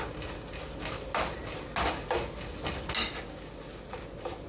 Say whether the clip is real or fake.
real